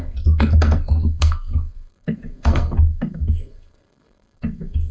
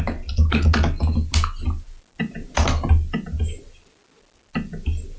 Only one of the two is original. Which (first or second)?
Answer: second